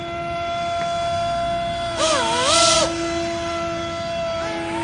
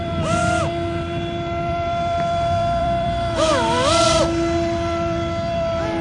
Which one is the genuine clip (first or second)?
first